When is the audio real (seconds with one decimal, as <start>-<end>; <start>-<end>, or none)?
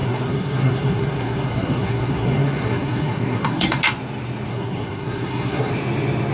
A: 3.8-4.5; 5.7-6.3